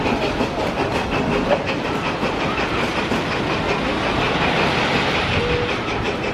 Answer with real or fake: real